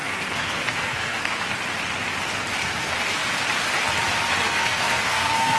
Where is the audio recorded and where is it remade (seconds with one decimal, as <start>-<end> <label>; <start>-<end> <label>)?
0.0-1.4 remade; 1.4-2.6 recorded; 2.6-3.3 remade; 3.3-4.3 recorded; 4.3-5.6 remade